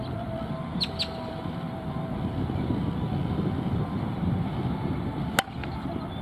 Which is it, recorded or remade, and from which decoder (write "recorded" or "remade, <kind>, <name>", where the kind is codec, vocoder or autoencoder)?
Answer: remade, vocoder, BigVGAN v2